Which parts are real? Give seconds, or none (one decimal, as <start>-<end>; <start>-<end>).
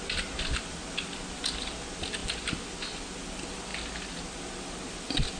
0.0-5.4